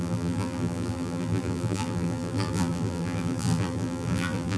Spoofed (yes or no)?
yes